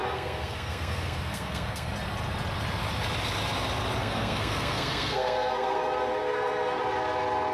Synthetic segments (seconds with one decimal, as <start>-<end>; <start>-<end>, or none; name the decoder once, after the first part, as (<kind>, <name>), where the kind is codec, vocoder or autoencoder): 0.0-1.9 (codec, SNAC); 4.0-6.8